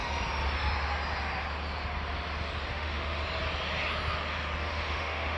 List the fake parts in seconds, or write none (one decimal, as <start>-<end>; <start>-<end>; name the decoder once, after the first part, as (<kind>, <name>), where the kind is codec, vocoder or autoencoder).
2.7-3.2 (autoencoder, DAC-VAE); 4.6-5.4